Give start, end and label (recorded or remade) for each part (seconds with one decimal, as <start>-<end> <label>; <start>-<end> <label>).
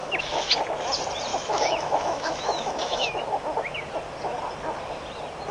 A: 0.0-0.6 remade; 0.6-1.3 recorded; 1.3-3.2 remade; 3.2-5.5 recorded